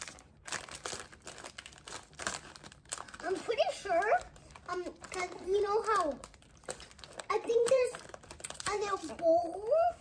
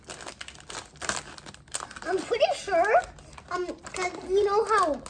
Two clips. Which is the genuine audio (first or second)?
second